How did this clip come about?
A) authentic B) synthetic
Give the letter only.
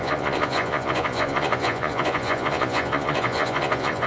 B